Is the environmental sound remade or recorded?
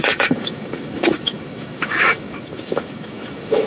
remade